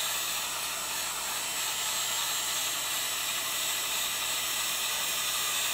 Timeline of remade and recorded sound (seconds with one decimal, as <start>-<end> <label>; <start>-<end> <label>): 0.0-2.6 recorded; 2.6-4.5 remade; 4.5-5.7 recorded